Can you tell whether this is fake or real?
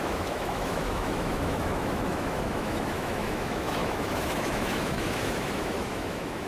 fake